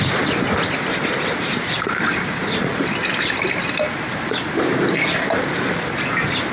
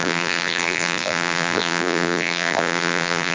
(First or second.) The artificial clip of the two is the second